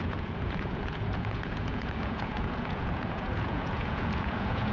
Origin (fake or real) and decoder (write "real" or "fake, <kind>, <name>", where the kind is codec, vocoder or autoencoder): fake, vocoder, Vocos